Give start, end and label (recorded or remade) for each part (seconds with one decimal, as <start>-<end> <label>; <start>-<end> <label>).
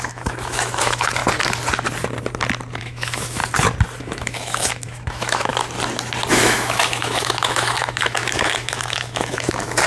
0.0-1.2 remade; 1.2-2.8 recorded; 2.8-3.4 remade; 3.4-4.0 recorded; 4.0-5.5 remade; 5.5-6.3 recorded; 6.3-9.9 remade